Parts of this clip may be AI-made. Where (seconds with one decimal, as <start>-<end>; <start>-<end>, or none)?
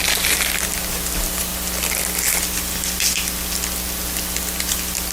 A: none